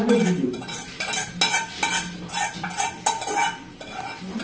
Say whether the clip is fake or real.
real